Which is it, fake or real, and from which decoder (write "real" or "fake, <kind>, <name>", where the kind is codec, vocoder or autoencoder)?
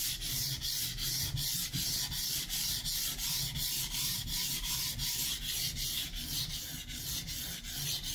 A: real